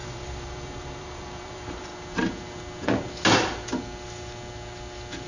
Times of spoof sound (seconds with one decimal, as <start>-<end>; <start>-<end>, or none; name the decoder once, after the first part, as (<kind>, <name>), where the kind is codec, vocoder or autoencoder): 0.0-1.9 (vocoder, BigVGAN v2)